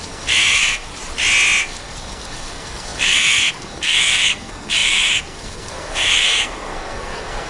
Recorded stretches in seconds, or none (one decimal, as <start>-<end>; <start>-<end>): 0.9-1.6